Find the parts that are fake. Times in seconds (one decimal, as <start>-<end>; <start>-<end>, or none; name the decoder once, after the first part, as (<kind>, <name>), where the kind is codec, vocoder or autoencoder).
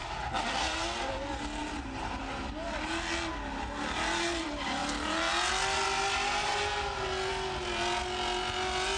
none